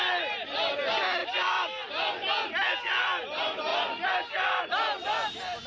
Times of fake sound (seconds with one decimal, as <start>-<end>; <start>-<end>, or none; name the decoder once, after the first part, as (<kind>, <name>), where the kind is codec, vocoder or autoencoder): 1.2-1.9 (vocoder, BigVGAN v2); 3.7-4.6